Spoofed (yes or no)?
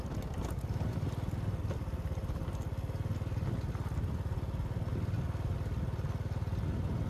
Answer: no